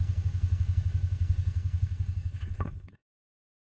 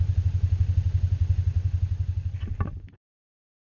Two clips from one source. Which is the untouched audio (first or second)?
second